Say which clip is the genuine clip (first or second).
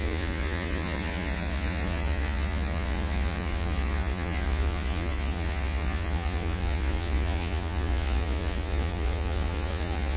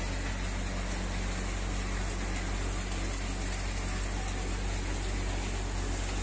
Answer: second